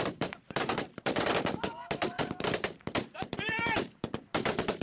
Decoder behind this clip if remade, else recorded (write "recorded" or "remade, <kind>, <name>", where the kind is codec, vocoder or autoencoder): remade, vocoder, BigVGAN v2